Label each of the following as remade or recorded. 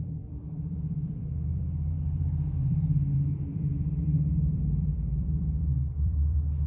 remade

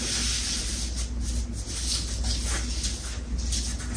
recorded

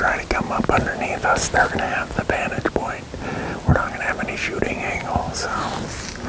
recorded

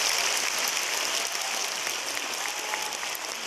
recorded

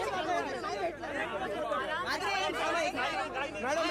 recorded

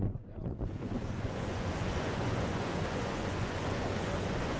remade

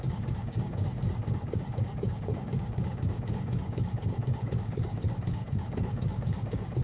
remade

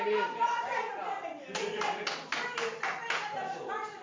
recorded